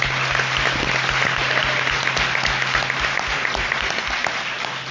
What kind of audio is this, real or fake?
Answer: real